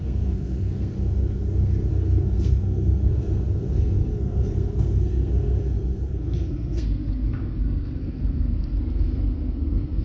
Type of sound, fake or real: fake